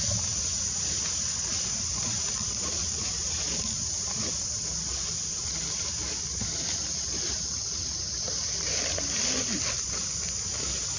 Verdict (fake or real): fake